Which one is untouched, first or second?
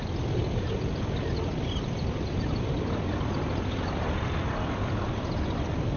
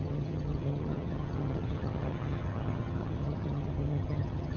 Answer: first